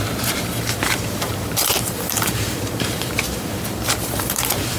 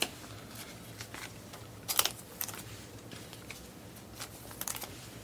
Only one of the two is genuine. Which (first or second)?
second